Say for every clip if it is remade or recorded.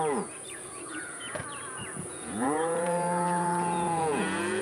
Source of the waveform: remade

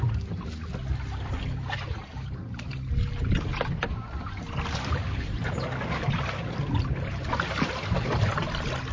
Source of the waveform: recorded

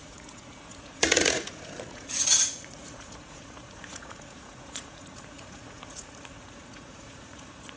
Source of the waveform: remade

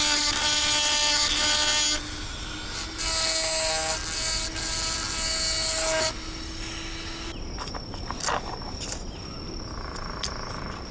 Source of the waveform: recorded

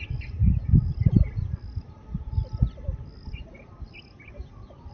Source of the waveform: recorded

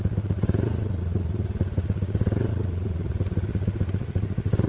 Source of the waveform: remade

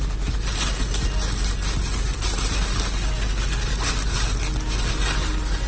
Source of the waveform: recorded